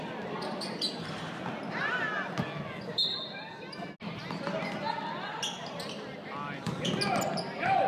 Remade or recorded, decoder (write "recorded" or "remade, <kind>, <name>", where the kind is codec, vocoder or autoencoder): recorded